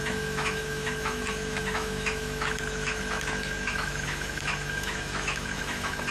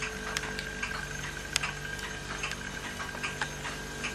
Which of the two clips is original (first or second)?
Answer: second